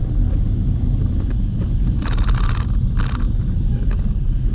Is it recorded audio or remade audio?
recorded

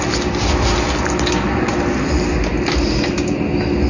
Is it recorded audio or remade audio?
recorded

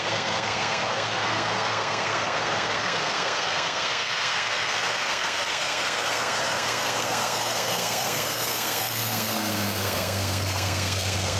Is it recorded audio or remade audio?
remade